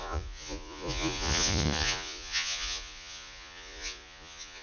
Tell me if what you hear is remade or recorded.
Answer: remade